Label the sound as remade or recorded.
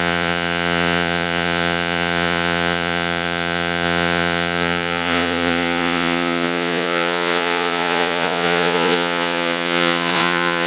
remade